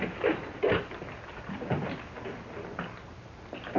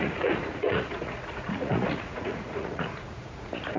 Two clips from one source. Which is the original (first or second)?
first